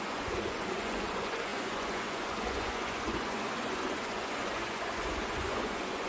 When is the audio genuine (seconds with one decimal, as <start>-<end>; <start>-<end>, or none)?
none